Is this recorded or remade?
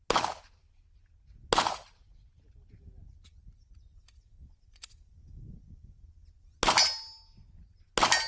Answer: recorded